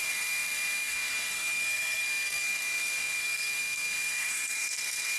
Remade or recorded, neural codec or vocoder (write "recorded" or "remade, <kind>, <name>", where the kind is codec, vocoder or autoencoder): remade, codec, SNAC